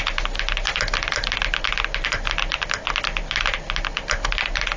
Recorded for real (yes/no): yes